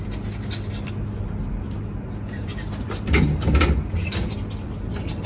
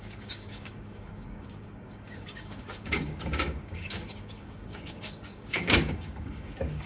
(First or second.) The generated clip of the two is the second